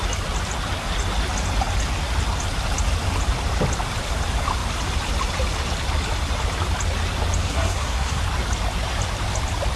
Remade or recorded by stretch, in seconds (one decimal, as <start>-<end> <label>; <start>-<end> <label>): 0.0-7.4 recorded; 7.4-8.2 remade; 8.2-9.8 recorded